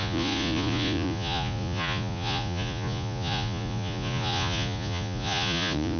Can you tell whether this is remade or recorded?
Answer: remade